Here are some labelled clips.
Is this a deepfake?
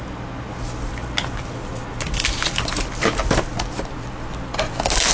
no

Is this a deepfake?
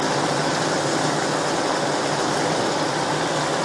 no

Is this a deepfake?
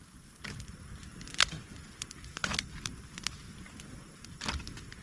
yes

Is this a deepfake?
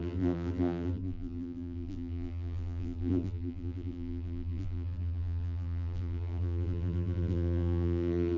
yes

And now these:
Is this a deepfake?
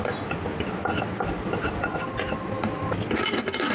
no